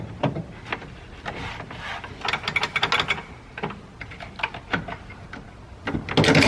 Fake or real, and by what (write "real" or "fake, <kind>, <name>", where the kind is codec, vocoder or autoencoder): real